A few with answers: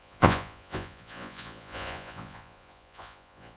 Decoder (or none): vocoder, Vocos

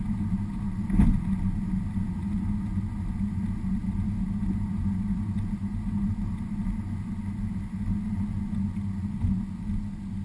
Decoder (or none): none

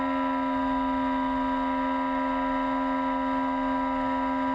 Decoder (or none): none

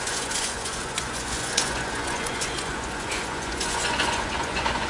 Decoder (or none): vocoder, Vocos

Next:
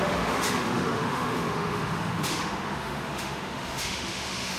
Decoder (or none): autoencoder, DAC-VAE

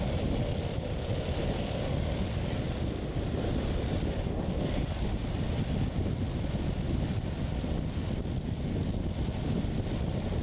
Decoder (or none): none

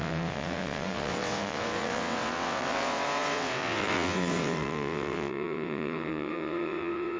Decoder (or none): vocoder, WaveNeXt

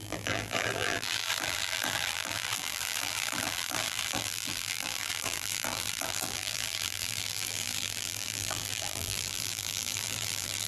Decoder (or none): vocoder, BigVGAN v2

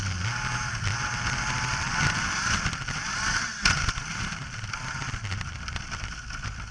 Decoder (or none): none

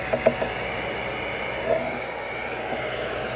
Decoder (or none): none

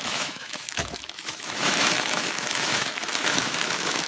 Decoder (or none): autoencoder, DAC-VAE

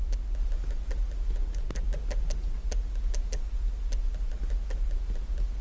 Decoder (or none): none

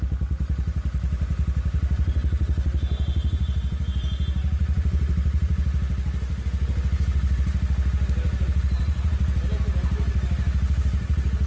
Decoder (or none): none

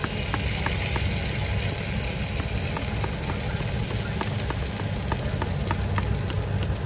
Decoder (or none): none